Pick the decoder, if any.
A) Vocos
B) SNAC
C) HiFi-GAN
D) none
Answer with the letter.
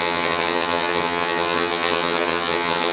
C